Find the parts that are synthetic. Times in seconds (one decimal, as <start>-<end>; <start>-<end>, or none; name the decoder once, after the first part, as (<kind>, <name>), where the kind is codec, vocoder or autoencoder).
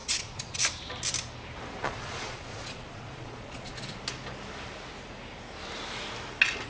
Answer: 0.0-0.6 (vocoder, Vocos); 1.8-4.0